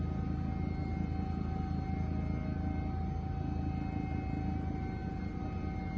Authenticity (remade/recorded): recorded